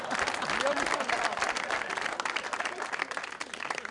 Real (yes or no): yes